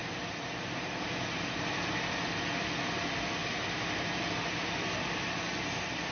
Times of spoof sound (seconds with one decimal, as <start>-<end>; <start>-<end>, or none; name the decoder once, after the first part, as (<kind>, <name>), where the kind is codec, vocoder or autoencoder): none